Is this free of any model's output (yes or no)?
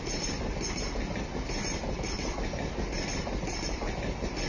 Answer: yes